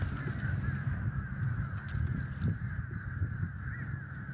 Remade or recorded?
recorded